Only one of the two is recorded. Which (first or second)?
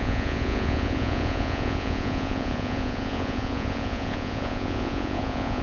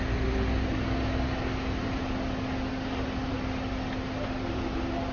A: second